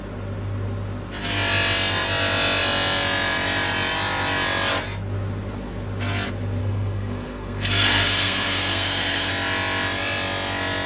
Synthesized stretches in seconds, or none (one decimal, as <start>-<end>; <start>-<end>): 6.6-9.3